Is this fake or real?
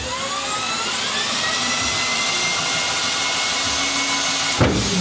real